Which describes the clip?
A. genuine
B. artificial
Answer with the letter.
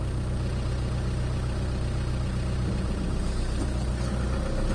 A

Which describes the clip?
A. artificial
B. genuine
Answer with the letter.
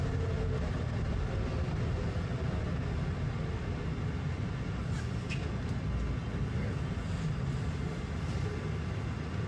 B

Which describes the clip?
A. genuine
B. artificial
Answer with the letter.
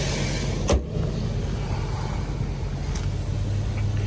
A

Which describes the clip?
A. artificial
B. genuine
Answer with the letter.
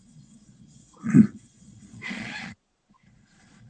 A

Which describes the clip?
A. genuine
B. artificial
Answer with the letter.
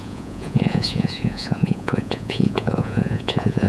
B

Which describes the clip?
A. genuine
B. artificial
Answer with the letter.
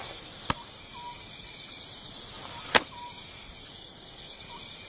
A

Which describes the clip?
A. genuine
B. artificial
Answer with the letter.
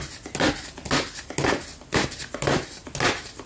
A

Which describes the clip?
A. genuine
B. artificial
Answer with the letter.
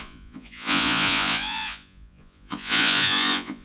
B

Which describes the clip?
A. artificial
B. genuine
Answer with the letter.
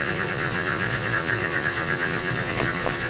A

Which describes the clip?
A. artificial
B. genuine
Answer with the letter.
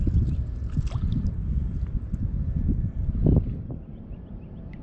B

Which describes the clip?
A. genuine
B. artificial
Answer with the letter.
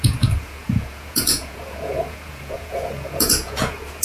B